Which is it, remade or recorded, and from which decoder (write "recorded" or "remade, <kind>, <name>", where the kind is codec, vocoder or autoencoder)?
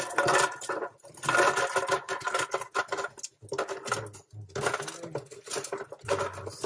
recorded